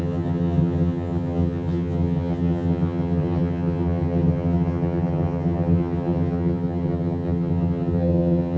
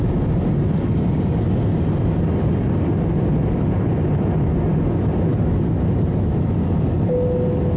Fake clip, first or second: first